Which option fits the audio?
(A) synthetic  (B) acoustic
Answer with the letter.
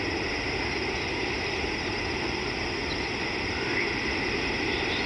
B